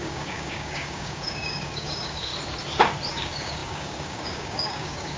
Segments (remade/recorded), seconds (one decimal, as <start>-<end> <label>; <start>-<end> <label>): 0.0-2.3 remade; 2.3-3.1 recorded; 3.1-5.2 remade